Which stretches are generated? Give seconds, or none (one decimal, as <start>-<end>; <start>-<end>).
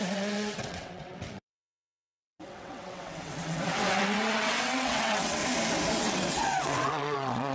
0.0-5.4; 6.0-7.5